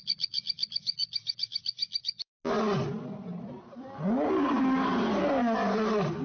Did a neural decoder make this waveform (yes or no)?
no